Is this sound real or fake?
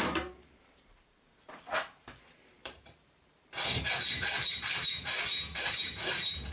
fake